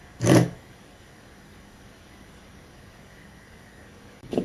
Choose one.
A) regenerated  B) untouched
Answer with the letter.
A